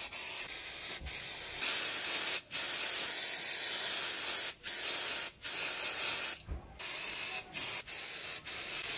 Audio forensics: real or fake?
real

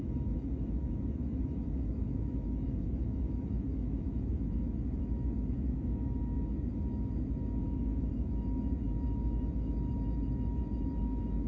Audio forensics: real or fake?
fake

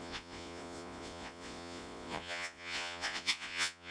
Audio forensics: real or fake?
fake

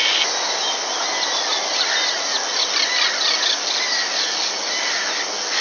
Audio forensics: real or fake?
real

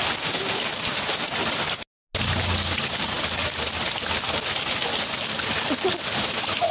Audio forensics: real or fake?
real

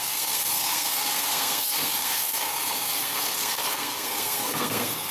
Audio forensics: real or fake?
fake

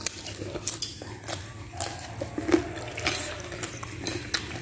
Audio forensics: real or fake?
real